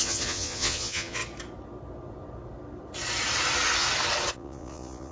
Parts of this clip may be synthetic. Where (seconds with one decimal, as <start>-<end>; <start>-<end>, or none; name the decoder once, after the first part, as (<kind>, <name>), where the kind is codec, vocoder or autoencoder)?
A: 0.0-1.2 (vocoder, Vocos); 4.3-5.1

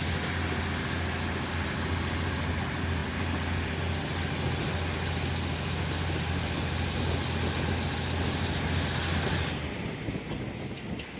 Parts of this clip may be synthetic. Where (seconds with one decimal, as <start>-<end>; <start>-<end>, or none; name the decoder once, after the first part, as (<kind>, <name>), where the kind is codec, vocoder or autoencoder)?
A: none

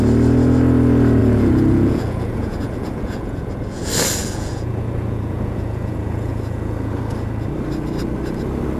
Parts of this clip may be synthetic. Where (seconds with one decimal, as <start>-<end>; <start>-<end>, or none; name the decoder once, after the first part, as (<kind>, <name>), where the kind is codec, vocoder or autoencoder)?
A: 1.2-3.8 (vocoder, Vocos); 4.2-7.0

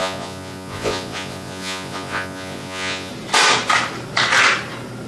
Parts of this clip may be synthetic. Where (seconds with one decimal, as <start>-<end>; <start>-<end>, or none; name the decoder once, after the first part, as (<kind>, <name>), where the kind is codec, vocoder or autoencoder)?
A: 0.0-3.1 (vocoder, Vocos)